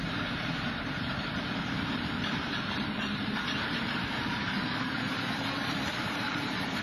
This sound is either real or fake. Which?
fake